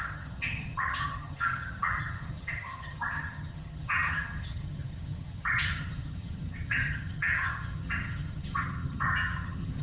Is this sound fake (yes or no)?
yes